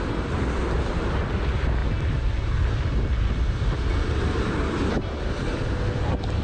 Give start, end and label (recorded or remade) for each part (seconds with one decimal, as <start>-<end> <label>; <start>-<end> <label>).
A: 0.0-6.4 recorded